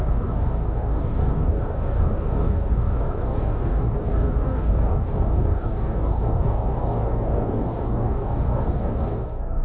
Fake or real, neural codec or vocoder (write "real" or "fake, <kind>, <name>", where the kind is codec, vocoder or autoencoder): fake, codec, DAC